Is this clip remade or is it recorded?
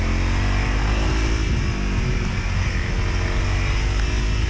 recorded